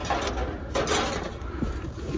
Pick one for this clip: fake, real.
real